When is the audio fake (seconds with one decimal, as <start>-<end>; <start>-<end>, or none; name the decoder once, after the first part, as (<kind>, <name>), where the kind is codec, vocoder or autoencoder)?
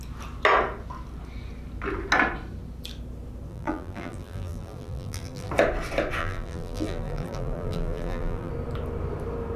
3.5-5.5 (vocoder, BigVGAN v2); 6.2-8.5